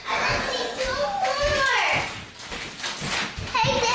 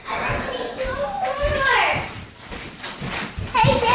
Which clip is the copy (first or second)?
second